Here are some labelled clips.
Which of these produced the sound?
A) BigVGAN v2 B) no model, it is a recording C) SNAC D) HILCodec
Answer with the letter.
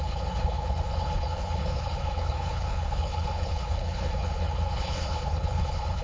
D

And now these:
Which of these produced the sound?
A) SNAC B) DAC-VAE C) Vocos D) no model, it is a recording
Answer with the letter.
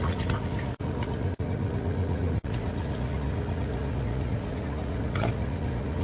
C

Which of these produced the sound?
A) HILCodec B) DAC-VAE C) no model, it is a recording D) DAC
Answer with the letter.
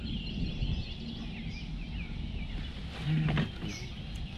C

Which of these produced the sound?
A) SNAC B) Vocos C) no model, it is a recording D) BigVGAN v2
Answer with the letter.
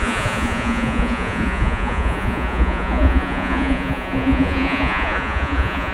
B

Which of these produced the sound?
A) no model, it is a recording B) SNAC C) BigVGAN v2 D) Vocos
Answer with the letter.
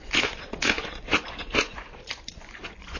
D